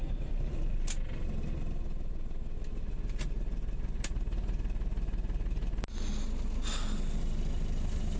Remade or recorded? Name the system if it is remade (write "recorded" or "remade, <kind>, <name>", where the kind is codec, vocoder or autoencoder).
recorded